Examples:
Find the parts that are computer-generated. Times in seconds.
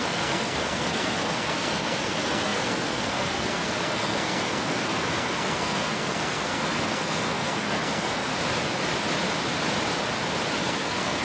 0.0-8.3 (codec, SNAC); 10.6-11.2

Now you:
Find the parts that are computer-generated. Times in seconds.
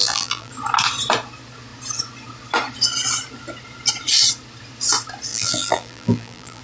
0.0-0.5 (vocoder, BigVGAN v2); 5.3-6.6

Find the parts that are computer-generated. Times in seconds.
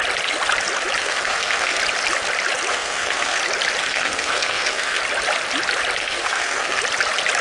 1.0-1.8 (codec, SNAC); 2.7-3.4; 3.8-5.0; 6.0-6.8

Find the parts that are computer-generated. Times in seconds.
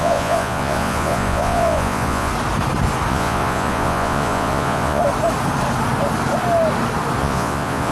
0.0-2.3 (vocoder, Vocos); 3.1-5.0; 7.2-7.9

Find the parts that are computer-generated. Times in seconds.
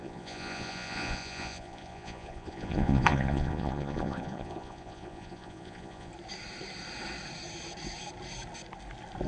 0.0-6.1 (vocoder, Vocos)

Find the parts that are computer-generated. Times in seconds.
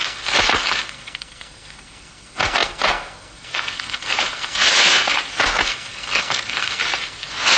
0.0-7.6 (codec, SNAC)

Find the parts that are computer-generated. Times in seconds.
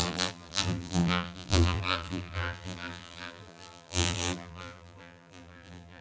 0.0-6.0 (vocoder, BigVGAN v2)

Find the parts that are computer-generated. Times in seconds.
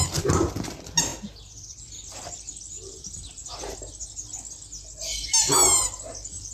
0.0-3.4 (vocoder, BigVGAN v2); 5.8-6.5